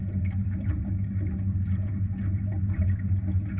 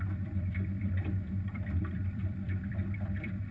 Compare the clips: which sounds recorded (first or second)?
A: first